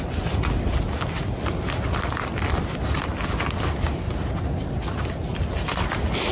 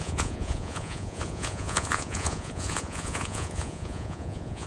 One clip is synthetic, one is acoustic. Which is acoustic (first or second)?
first